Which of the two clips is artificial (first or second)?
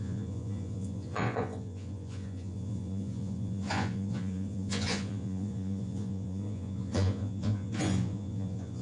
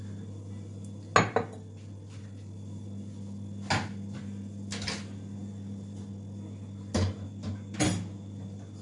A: first